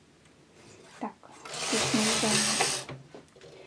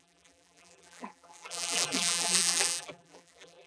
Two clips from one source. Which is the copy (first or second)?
second